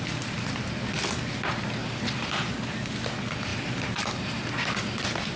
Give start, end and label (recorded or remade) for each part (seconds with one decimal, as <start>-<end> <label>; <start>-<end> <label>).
0.0-1.8 recorded; 1.8-2.7 remade; 2.7-3.5 recorded; 3.5-5.0 remade; 5.0-5.4 recorded